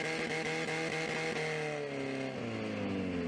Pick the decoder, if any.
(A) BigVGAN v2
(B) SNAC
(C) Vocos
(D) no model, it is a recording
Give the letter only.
D